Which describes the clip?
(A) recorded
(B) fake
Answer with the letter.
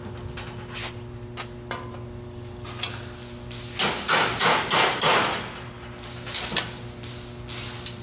A